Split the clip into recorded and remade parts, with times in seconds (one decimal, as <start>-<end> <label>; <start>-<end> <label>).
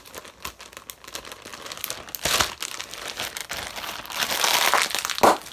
0.0-5.5 recorded